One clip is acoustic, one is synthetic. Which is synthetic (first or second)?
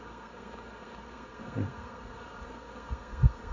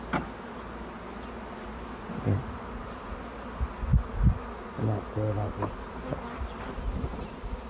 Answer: first